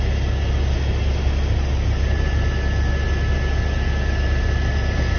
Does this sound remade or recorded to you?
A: recorded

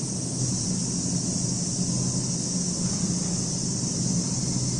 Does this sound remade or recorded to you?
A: recorded